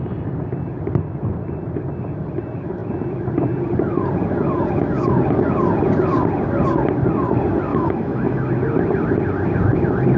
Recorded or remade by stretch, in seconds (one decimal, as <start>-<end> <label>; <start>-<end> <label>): 0.0-7.7 recorded; 7.7-8.5 remade; 8.5-10.2 recorded